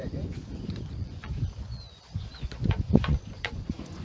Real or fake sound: fake